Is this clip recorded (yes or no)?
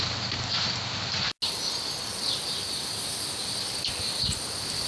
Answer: yes